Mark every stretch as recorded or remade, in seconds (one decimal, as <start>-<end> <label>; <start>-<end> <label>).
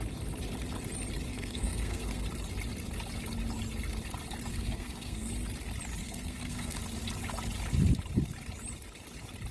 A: 0.0-1.3 recorded; 1.3-2.2 remade; 2.2-4.5 recorded; 4.5-5.3 remade; 5.3-6.0 recorded; 6.0-6.8 remade; 6.8-9.5 recorded